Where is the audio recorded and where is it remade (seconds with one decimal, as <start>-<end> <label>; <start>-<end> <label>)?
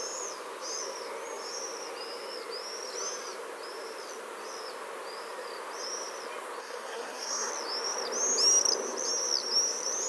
0.0-6.6 recorded; 6.6-7.5 remade; 7.5-10.1 recorded